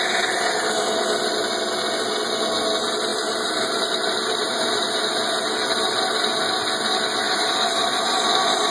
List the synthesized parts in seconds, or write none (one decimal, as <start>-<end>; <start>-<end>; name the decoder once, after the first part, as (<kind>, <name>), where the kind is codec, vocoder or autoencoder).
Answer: 3.1-4.9 (vocoder, BigVGAN v2); 7.2-8.7